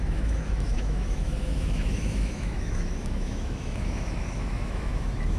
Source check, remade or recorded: remade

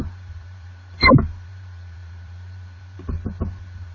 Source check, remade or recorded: remade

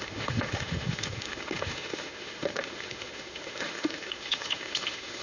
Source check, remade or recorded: remade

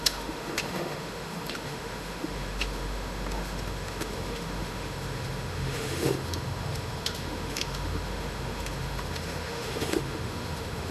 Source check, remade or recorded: remade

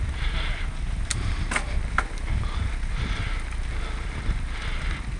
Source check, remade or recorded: recorded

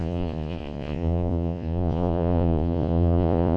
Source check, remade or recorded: remade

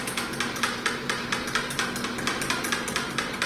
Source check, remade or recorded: recorded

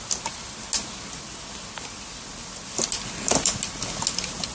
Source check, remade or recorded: recorded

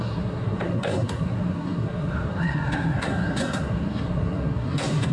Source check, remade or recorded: remade